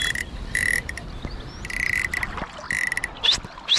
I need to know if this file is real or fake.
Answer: real